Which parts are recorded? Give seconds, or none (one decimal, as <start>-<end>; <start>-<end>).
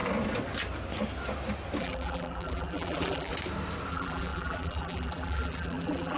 0.0-1.8; 3.3-3.9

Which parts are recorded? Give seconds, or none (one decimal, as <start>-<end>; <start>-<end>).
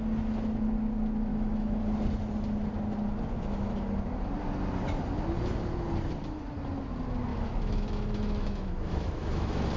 0.0-1.3; 1.8-7.3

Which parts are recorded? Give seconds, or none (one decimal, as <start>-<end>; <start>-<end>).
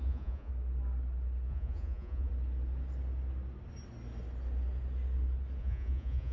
0.5-1.5; 2.3-5.6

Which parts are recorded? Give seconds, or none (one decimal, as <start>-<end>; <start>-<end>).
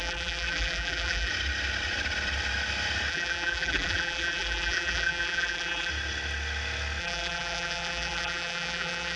1.3-3.1; 5.9-7.0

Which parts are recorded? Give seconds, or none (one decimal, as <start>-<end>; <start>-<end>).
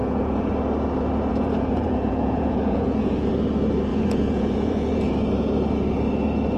0.5-1.3; 3.3-3.9; 5.1-6.6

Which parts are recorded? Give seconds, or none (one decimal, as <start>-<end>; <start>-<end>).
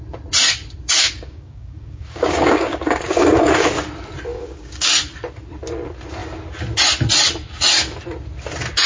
0.0-1.0; 3.5-4.3; 4.9-8.9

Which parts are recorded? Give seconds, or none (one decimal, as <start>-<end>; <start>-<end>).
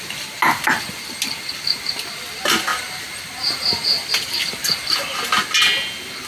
0.0-2.7; 5.6-6.3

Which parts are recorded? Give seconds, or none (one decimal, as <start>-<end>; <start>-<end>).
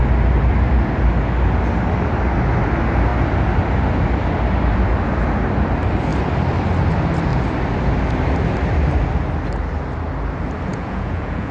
0.0-10.7